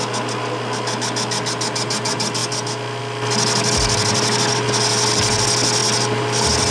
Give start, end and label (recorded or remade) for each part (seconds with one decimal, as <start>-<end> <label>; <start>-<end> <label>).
0.0-6.7 recorded